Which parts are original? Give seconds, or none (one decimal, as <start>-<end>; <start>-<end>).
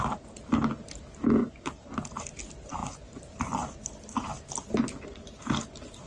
0.0-1.4; 2.2-6.1